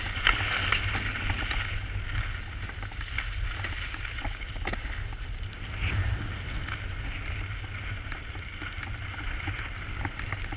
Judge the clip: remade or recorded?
recorded